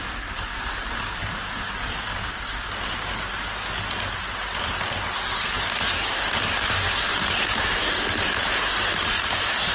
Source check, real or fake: real